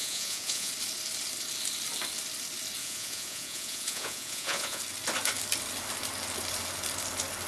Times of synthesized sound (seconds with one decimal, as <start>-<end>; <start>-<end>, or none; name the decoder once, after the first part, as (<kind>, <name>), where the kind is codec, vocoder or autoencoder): 0.0-0.7 (vocoder, Vocos); 2.8-4.8